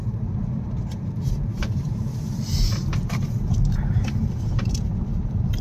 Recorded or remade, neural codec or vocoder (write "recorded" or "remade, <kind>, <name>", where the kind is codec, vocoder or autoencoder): remade, vocoder, BigVGAN v2